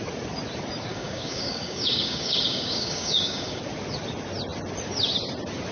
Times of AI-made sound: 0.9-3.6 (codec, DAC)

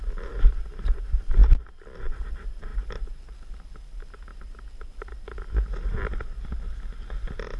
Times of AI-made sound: none

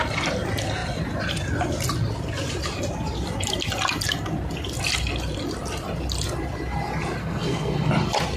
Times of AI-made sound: 7.2-7.9 (codec, SNAC)

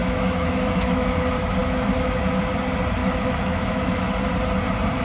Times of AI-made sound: 0.0-1.2 (autoencoder, DAC-VAE); 1.6-2.4; 3.0-4.2